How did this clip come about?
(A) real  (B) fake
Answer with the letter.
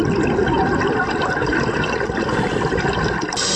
A